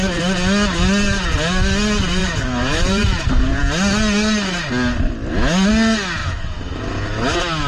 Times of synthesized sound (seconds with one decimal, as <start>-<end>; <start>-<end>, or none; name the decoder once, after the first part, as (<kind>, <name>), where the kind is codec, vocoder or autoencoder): 2.2-3.6 (vocoder, BigVGAN v2); 6.2-6.8